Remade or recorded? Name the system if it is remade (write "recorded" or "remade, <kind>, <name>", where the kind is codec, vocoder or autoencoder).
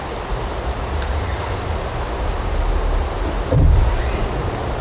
recorded